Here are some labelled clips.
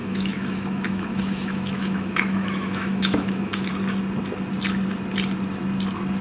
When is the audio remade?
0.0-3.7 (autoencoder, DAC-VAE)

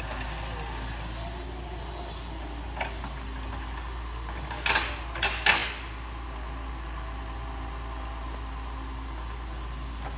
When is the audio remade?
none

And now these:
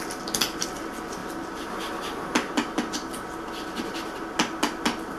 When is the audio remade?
none

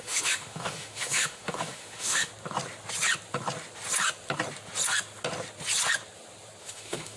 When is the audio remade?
0.0-2.3 (autoencoder, DAC-VAE); 6.6-7.2

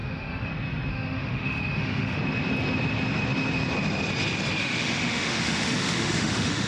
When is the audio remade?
0.0-0.5 (autoencoder, DAC-VAE); 0.9-2.2; 4.6-6.7

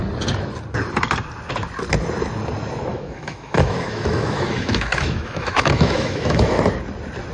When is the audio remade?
2.9-6.6 (autoencoder, DAC-VAE)